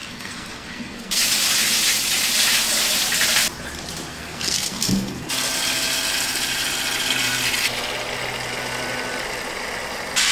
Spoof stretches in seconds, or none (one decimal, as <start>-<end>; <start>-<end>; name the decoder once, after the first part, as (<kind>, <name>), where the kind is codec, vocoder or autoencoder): 0.0-1.2 (codec, SNAC); 4.1-5.3